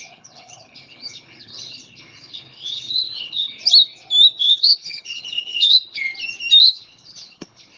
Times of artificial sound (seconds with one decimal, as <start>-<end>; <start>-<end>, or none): 0.0-3.6; 4.4-6.1; 6.6-7.8